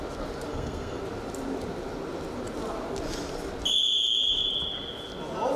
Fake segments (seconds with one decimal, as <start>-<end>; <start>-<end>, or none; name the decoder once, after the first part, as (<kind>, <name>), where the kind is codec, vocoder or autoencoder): 0.5-1.0 (codec, SNAC)